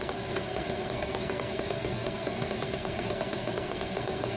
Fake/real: fake